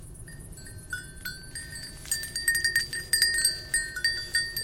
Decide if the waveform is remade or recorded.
recorded